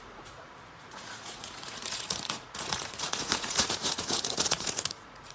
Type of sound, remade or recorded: remade